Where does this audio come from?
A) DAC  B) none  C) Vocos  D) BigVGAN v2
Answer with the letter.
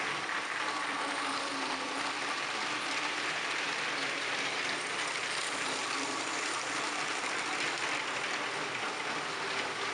B